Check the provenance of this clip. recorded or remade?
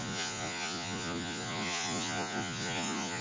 remade